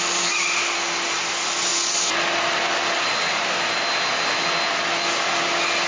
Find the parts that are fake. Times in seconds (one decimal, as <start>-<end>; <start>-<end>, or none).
none